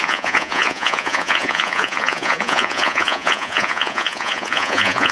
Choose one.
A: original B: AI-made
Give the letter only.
B